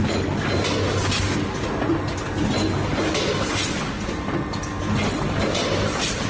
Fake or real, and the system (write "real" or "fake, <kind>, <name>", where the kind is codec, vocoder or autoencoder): real